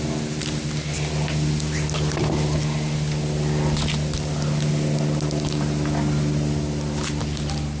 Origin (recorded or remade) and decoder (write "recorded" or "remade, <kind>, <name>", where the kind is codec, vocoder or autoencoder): recorded